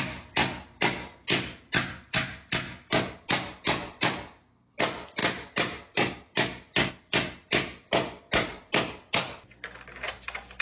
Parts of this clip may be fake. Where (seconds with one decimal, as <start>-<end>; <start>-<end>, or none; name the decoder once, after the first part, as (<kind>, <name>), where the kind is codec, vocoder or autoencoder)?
none